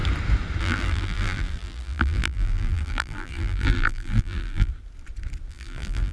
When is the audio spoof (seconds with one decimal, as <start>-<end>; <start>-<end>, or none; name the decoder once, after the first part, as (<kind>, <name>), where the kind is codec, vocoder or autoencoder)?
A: 0.6-4.7 (vocoder, BigVGAN v2); 5.5-6.1